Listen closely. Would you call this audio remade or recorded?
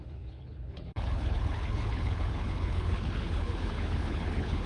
remade